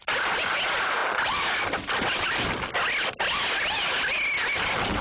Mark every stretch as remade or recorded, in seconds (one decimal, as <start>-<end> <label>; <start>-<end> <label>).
0.0-5.0 recorded